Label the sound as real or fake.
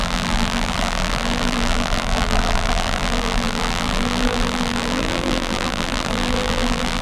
fake